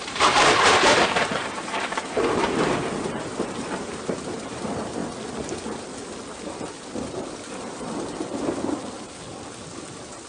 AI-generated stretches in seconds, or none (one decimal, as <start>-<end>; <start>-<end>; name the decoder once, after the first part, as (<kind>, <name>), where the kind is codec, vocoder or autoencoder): 0.0-5.0 (vocoder, BigVGAN v2)